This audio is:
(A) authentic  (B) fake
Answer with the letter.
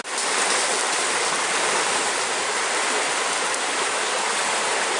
A